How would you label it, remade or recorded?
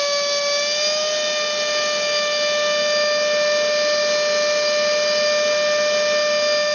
recorded